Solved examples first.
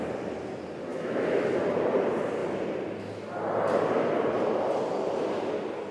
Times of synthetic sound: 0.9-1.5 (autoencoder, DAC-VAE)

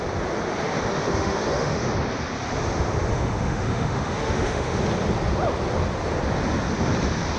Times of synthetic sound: 0.9-1.9 (autoencoder, DAC-VAE); 3.1-4.8

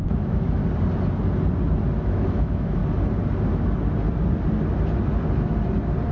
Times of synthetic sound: 0.0-0.6 (autoencoder, DAC-VAE); 2.0-2.8